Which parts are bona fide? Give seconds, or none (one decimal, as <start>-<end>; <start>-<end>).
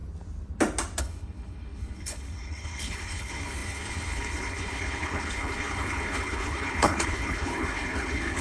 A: 0.0-1.0